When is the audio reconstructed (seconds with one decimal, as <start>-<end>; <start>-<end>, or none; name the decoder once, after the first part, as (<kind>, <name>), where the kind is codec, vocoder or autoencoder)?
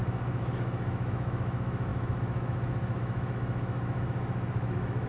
0.0-5.1 (autoencoder, DAC-VAE)